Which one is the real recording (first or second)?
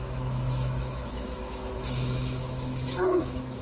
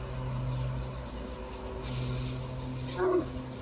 second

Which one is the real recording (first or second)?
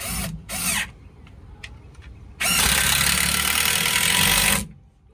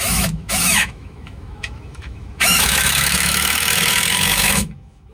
first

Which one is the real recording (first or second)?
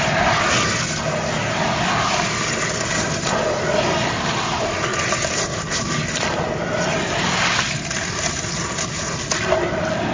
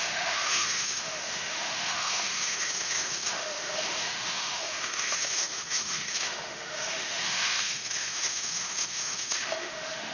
first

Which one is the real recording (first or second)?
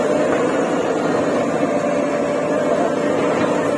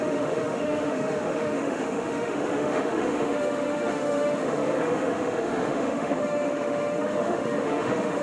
first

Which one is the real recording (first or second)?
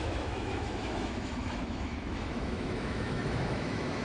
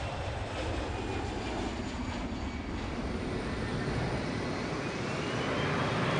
second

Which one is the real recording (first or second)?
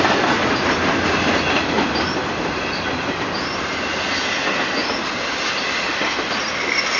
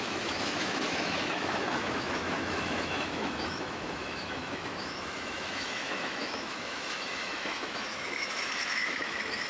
first